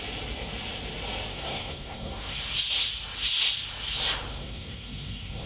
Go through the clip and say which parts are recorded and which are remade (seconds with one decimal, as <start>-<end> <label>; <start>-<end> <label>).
0.0-1.3 recorded; 1.3-2.4 remade; 2.4-4.3 recorded; 4.3-5.5 remade